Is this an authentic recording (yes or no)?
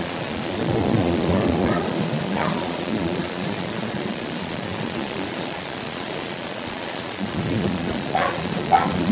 no